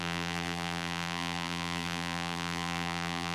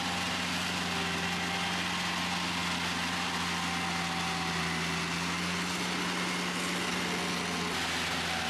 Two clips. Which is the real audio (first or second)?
second